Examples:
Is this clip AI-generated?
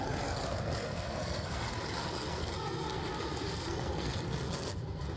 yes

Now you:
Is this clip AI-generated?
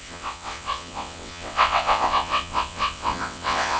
yes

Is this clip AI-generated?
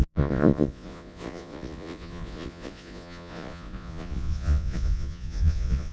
yes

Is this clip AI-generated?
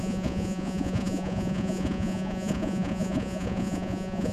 yes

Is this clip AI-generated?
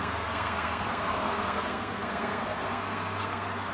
yes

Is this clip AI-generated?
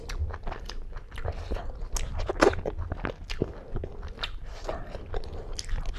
no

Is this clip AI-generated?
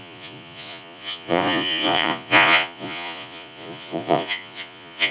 yes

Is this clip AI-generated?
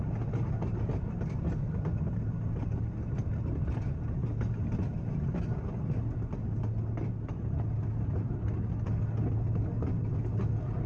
no